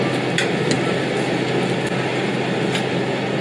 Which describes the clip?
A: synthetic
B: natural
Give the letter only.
B